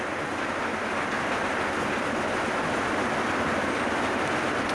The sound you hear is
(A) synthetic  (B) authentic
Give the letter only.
B